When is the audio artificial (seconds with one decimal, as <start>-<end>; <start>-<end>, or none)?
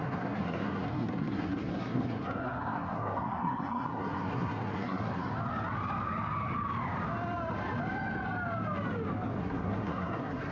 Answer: 0.0-5.3; 9.4-10.5